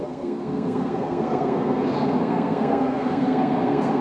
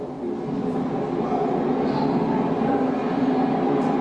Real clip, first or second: second